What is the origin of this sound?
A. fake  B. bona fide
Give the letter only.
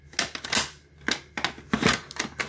B